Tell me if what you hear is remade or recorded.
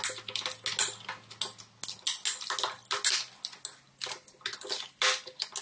recorded